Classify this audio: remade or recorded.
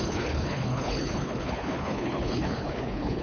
remade